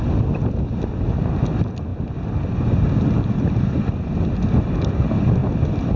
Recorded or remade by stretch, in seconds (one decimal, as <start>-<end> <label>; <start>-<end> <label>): 0.0-6.0 recorded